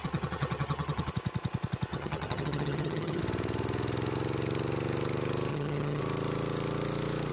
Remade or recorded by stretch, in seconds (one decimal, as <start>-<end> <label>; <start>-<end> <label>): 0.0-1.1 remade; 1.1-1.9 recorded; 1.9-3.2 remade; 3.2-5.5 recorded; 5.5-6.0 remade; 6.0-7.3 recorded